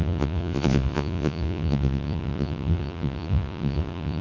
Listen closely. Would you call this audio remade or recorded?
remade